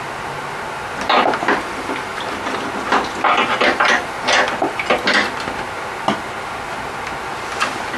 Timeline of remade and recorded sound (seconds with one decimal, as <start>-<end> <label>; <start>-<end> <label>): 0.0-8.0 recorded